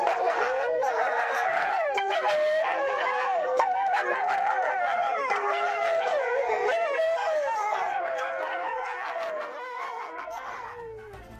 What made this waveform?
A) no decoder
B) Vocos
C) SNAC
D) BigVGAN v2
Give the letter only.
C